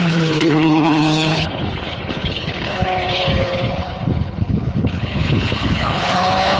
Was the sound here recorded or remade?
remade